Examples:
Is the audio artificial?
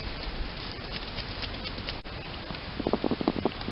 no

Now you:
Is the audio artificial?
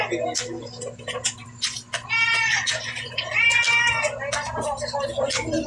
no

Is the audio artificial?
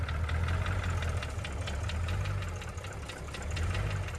no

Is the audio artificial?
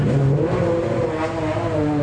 yes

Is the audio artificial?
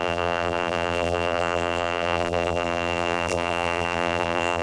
yes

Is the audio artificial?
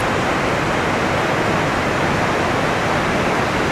no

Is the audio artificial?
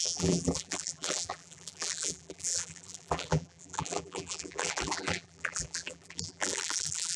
yes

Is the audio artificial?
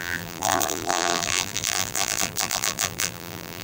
yes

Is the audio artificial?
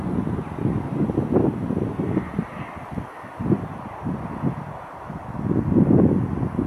no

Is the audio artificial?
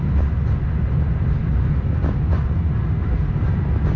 no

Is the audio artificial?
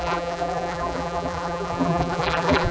yes